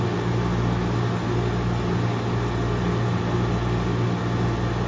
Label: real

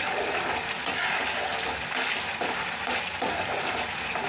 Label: real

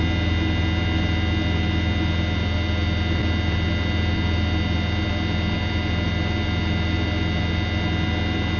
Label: real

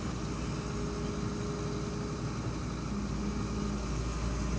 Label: real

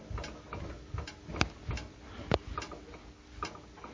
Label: real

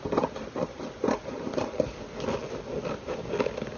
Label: real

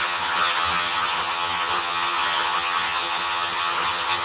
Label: fake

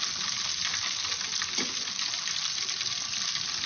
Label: real